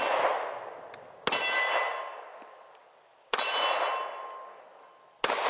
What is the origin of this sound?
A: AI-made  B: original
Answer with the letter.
B